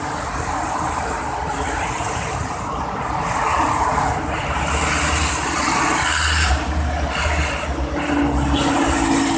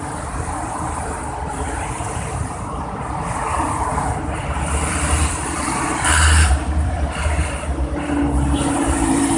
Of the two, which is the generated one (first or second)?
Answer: second